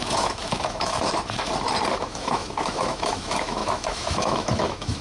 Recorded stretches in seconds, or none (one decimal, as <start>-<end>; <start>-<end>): 1.5-2.0